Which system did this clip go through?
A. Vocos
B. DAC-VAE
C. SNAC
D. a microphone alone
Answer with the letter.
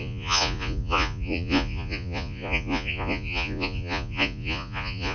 A